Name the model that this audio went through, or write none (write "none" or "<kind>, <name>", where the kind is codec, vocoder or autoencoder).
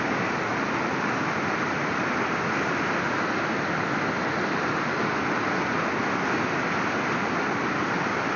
none